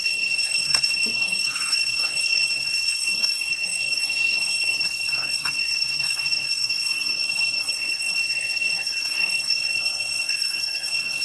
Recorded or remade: remade